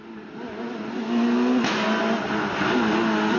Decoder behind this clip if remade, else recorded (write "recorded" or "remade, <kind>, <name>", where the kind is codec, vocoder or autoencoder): recorded